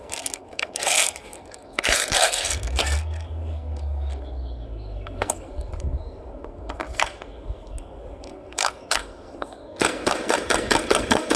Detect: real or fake fake